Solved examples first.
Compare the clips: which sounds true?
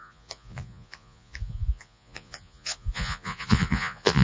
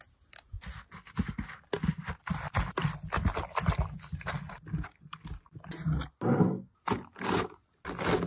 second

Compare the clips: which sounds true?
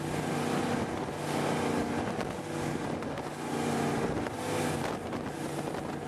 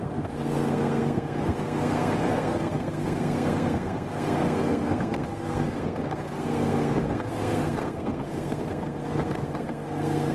first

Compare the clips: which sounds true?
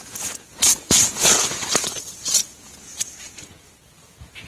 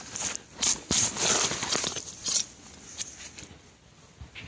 second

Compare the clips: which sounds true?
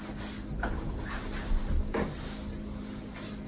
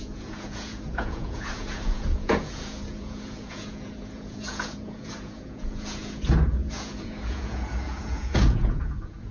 first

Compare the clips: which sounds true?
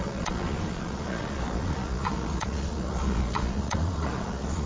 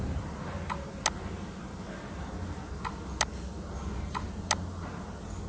second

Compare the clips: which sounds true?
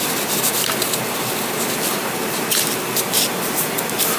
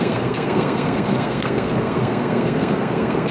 first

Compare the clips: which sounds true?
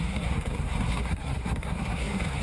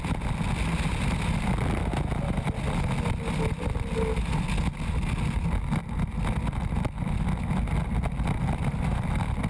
second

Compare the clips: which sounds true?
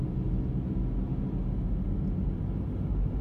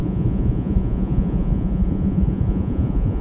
first